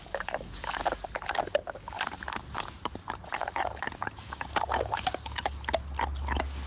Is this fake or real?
real